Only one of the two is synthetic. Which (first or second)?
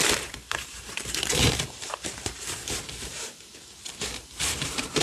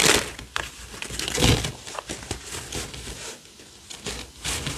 first